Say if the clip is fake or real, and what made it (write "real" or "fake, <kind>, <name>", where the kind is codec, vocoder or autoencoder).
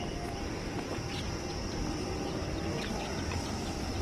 real